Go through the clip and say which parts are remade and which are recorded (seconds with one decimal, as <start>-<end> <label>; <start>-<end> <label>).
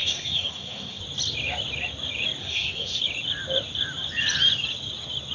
0.0-1.0 remade; 1.0-2.4 recorded; 2.4-3.0 remade; 3.0-5.3 recorded